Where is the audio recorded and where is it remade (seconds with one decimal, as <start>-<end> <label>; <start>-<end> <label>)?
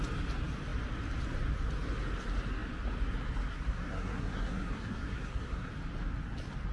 0.0-3.5 recorded; 3.5-5.7 remade; 5.7-6.7 recorded